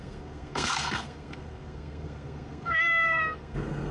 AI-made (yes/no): yes